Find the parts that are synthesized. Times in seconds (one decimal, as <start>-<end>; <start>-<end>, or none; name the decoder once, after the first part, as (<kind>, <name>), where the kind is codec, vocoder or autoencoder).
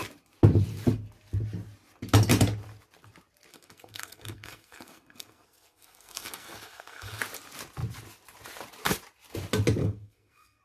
3.5-7.2 (codec, SNAC); 9.8-10.6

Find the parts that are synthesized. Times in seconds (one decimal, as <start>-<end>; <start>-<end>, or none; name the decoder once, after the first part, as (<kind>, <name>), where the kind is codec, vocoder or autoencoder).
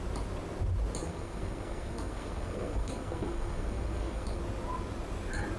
1.0-4.4 (codec, SNAC)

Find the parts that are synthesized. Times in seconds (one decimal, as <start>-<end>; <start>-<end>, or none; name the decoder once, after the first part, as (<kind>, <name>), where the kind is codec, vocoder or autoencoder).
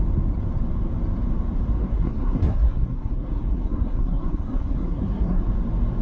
1.8-5.4 (codec, SNAC)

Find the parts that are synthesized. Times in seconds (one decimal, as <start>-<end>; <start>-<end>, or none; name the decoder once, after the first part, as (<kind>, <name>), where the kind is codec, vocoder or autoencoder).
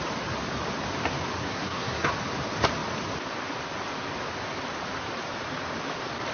1.4-2.1 (codec, SNAC)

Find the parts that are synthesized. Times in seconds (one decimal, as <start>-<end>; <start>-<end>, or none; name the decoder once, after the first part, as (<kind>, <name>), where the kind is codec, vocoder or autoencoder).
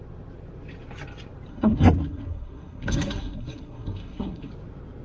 1.5-4.5 (codec, SNAC)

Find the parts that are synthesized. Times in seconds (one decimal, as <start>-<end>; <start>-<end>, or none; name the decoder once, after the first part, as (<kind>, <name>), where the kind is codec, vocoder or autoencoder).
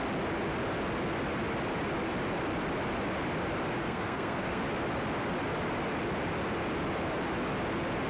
3.8-4.6 (codec, SNAC)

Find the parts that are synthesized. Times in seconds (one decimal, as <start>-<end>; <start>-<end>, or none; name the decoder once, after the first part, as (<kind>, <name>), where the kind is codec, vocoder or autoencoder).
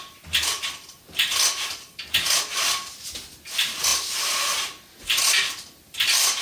none